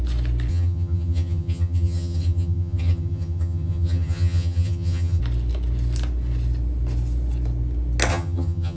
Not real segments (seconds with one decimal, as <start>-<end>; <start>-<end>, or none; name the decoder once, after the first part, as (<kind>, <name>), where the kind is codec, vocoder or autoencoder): 0.5-5.2 (vocoder, HiFi-GAN); 8.1-8.8

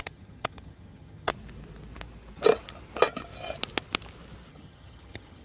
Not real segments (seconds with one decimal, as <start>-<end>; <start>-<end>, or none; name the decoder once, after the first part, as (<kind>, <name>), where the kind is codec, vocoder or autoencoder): 0.0-1.3 (vocoder, HiFi-GAN); 4.5-5.4

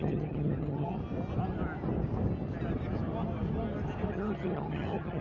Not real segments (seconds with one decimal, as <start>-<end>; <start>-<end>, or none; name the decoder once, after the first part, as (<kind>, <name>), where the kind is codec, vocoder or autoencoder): 0.0-1.0 (vocoder, HiFi-GAN); 4.1-5.2